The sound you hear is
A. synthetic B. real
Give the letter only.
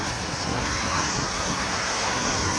A